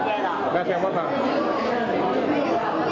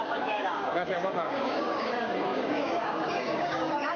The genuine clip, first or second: first